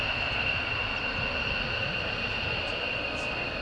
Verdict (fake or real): real